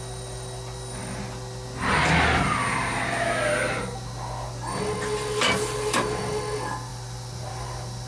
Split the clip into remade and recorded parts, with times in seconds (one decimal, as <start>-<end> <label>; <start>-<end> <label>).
0.0-8.1 recorded